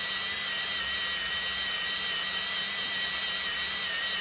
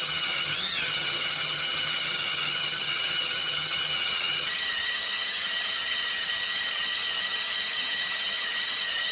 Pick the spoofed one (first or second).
second